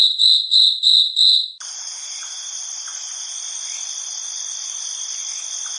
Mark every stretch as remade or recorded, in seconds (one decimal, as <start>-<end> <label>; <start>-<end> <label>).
0.0-0.9 remade; 0.9-2.5 recorded; 2.5-4.1 remade; 4.1-5.8 recorded